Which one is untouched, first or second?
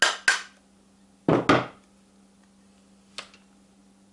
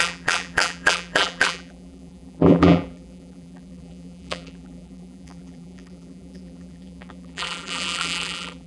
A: first